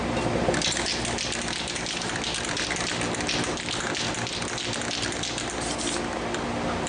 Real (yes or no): yes